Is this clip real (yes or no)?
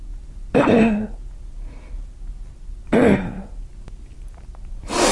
yes